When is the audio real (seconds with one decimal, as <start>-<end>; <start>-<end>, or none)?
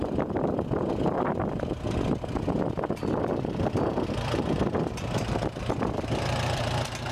0.0-7.1